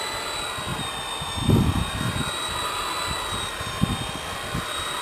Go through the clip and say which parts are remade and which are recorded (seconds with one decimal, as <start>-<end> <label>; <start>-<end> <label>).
0.0-5.0 recorded